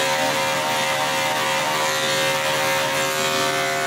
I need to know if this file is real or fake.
real